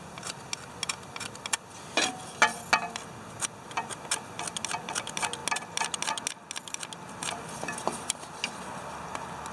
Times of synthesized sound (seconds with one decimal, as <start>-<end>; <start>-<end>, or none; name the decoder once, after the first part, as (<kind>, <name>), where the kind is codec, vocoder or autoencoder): none